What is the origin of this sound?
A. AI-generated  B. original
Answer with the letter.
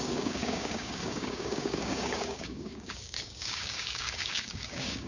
A